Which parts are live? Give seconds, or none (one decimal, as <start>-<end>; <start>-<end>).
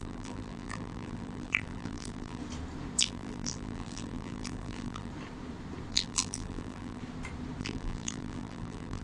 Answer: 2.4-3.0; 5.1-5.9; 7.0-7.6